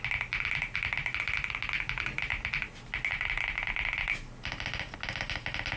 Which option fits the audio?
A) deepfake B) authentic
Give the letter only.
B